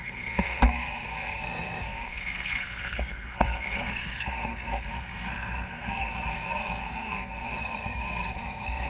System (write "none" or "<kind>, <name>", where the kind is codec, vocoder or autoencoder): codec, SNAC